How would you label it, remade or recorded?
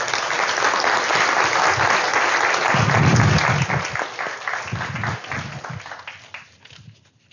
recorded